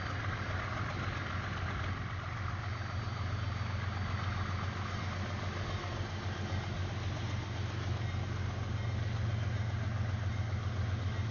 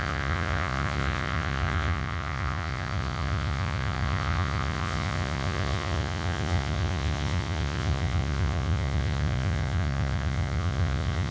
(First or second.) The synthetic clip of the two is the second